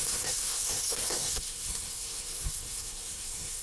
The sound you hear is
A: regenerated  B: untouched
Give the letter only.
A